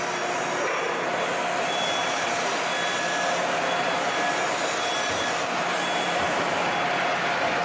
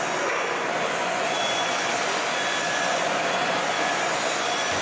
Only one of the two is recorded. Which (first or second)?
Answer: first